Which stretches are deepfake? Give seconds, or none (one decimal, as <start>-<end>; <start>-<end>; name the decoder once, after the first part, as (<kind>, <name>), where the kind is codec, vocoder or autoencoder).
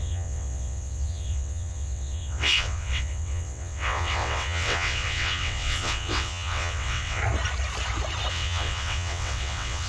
0.0-7.2 (vocoder, WaveNeXt); 8.3-9.9